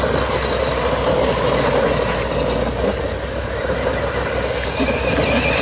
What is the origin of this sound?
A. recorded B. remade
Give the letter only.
A